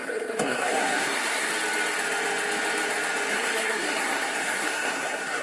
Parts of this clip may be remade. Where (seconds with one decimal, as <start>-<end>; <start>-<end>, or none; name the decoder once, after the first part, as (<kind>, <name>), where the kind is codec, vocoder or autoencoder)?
0.0-1.5 (codec, SNAC); 3.3-5.4

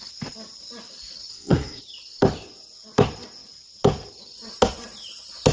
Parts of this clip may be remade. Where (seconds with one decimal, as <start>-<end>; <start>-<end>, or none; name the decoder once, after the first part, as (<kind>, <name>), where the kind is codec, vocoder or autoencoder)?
1.3-1.8 (codec, SNAC)

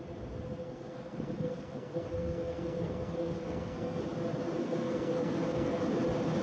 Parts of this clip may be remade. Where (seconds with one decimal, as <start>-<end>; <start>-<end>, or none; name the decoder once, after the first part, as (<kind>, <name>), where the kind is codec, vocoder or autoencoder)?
0.6-4.0 (codec, SNAC); 4.6-5.8

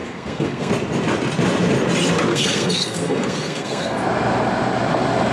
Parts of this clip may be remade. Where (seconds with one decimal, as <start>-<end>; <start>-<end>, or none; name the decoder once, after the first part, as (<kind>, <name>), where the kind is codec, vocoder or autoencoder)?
0.0-0.7 (codec, SNAC); 2.3-4.0